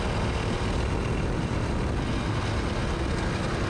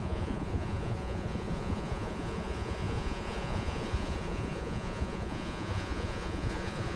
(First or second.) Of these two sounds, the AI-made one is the second